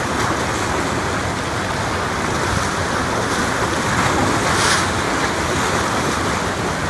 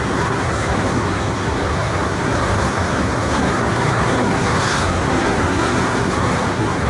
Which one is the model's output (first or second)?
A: second